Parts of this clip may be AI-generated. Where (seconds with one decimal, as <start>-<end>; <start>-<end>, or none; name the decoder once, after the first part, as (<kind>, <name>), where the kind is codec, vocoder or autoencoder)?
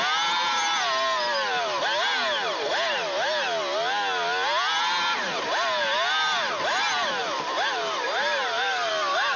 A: 7.2-8.9 (vocoder, BigVGAN v2)